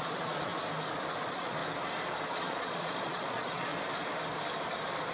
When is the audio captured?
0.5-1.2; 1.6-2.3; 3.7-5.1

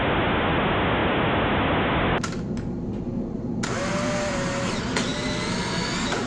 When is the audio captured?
0.0-6.3